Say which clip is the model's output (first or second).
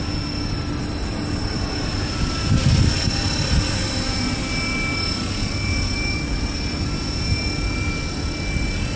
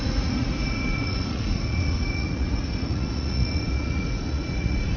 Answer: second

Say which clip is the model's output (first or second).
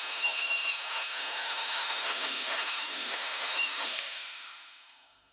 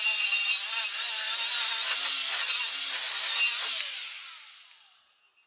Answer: first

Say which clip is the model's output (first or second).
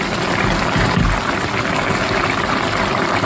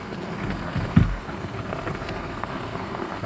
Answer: second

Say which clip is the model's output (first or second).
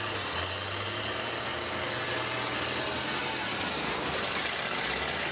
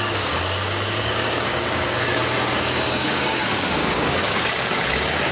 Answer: second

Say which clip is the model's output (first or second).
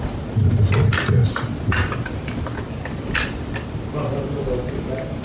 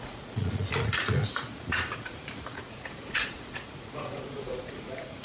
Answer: second